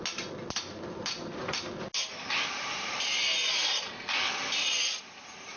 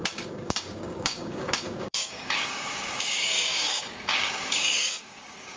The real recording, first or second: first